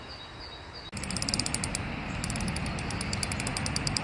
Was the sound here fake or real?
real